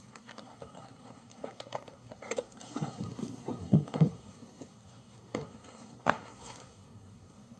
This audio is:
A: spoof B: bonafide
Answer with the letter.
A